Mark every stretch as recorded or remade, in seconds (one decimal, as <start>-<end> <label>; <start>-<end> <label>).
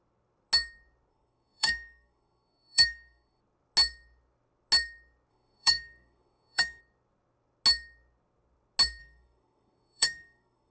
0.0-1.1 recorded; 1.1-3.4 remade; 3.4-5.3 recorded; 5.3-6.8 remade; 6.8-9.0 recorded; 9.0-10.7 remade